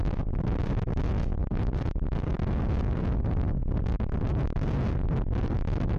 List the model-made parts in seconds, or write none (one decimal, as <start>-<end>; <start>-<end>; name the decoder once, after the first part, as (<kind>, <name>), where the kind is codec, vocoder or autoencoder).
none